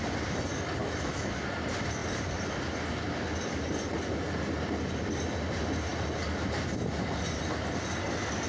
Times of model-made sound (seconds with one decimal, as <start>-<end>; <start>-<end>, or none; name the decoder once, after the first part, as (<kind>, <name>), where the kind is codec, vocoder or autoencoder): 0.8-1.4 (autoencoder, DAC-VAE)